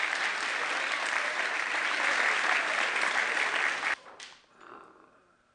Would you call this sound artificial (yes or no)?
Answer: no